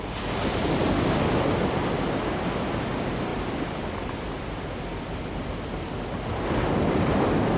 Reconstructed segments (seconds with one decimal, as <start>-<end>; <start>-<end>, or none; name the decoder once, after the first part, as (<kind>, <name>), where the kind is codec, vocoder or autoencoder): 3.3-5.3 (vocoder, BigVGAN v2)